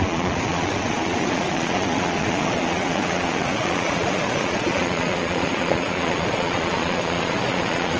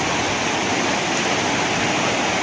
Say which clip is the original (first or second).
second